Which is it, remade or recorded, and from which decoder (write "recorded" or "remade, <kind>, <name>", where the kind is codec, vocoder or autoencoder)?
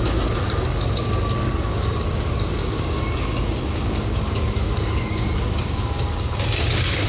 remade, codec, DAC